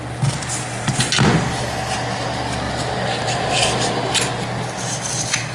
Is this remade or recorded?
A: recorded